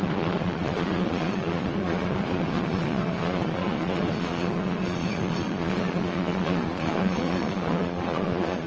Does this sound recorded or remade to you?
remade